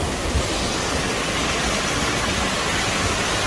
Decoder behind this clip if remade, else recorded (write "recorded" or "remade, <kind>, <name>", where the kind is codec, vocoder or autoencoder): recorded